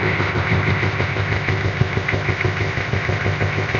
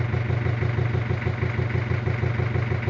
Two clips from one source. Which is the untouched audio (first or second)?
second